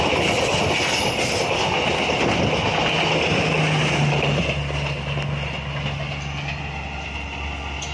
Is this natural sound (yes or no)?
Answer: yes